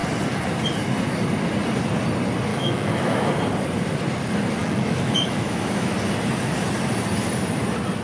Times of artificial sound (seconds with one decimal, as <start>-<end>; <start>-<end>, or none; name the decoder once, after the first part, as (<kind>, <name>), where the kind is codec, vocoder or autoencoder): 2.5-3.2 (autoencoder, DAC-VAE); 4.6-5.9